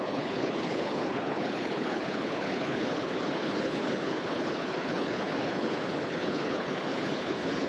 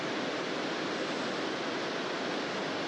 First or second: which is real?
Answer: second